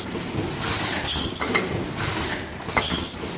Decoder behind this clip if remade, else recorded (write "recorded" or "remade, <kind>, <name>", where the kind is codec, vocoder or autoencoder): recorded